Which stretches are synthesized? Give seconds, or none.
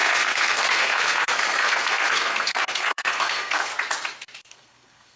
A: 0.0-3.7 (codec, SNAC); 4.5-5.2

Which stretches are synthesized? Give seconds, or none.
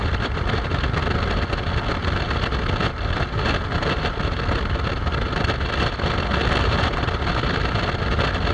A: none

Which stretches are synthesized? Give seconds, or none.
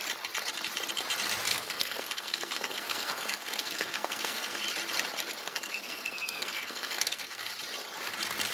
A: 1.5-4.6 (codec, SNAC); 5.4-7.5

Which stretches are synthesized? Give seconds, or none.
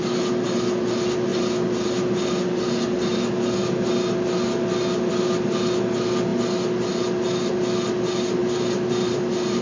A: none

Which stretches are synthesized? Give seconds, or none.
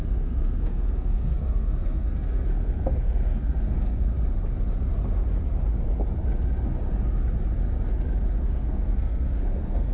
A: 0.0-4.1 (codec, SNAC); 8.4-9.9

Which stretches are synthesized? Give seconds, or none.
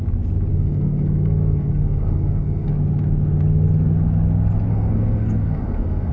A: 0.5-2.7 (codec, SNAC); 4.7-6.1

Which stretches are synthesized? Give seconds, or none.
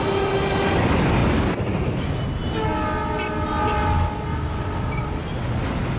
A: none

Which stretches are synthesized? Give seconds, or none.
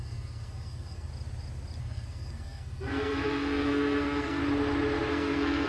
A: 0.0-1.1 (codec, SNAC); 1.8-4.4; 5.1-5.7